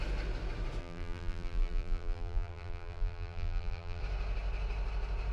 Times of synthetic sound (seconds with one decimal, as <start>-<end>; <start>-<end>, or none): 0.8-4.0